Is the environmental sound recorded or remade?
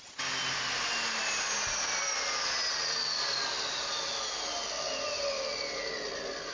recorded